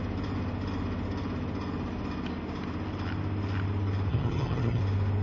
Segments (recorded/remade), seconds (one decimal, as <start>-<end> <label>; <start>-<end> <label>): 0.0-4.1 recorded; 4.1-4.8 remade; 4.8-5.2 recorded